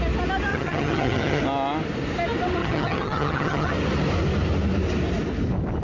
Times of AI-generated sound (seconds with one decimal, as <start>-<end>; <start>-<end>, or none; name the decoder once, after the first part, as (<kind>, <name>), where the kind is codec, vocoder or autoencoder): 0.5-1.4 (vocoder, HiFi-GAN); 2.6-3.7